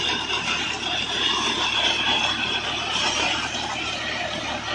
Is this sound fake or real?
real